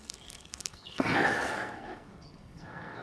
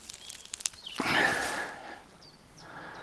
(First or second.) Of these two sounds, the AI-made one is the first